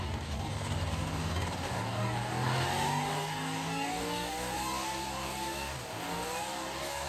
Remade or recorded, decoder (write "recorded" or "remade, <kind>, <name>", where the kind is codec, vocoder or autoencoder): remade, codec, DAC